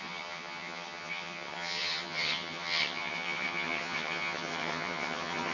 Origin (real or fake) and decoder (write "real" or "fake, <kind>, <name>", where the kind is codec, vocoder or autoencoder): fake, vocoder, HiFi-GAN